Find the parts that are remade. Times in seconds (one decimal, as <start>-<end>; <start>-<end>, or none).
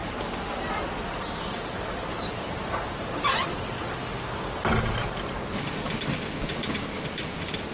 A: 0.0-2.8